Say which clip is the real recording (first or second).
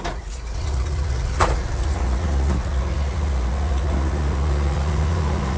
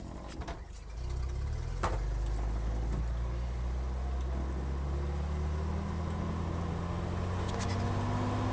second